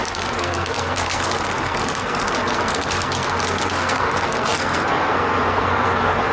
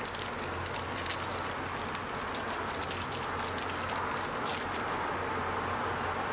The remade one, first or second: first